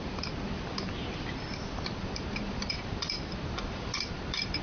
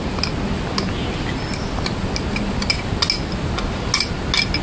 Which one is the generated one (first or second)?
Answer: first